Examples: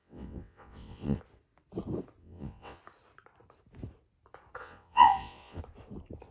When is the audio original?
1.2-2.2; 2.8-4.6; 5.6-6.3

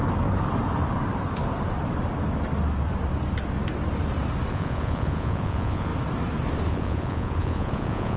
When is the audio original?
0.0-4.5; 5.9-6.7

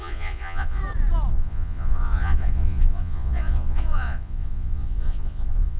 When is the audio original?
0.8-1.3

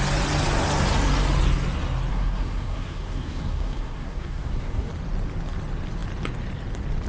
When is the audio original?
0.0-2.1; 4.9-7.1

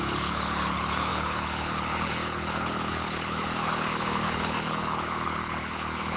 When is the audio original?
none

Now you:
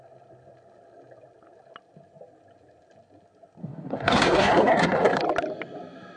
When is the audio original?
0.0-3.6; 5.2-6.2

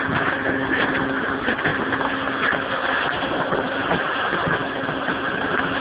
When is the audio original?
0.0-5.8

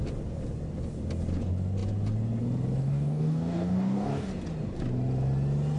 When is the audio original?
0.0-2.8; 4.3-5.8